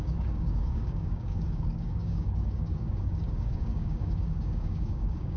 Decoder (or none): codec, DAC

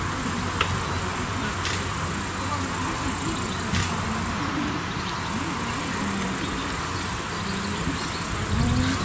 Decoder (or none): none